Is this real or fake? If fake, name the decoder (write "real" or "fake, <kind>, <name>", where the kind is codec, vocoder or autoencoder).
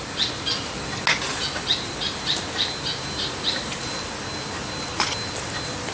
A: real